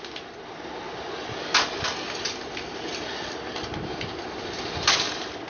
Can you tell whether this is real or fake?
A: real